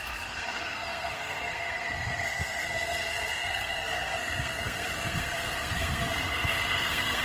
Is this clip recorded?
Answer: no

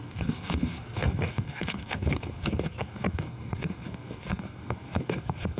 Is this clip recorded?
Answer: no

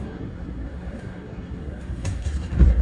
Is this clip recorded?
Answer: no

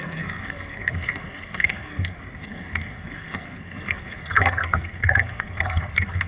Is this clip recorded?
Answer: no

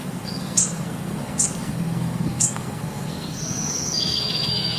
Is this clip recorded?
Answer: no